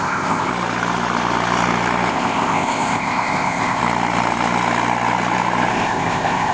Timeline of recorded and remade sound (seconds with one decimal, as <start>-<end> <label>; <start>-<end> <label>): 0.0-0.5 remade; 0.5-2.1 recorded; 2.1-3.8 remade; 3.8-5.7 recorded; 5.7-6.5 remade